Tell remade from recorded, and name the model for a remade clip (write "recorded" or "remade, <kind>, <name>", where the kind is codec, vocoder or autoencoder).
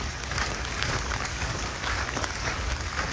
remade, codec, DAC